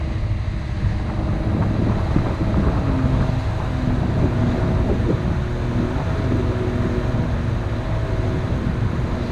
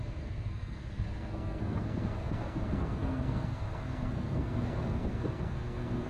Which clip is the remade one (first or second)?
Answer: second